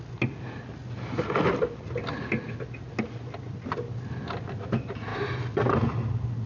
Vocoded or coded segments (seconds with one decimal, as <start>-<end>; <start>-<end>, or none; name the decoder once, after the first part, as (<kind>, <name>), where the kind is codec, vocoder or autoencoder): none